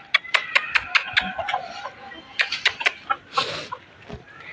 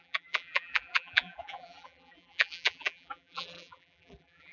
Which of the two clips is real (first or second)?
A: first